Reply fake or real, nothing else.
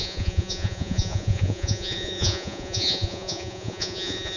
fake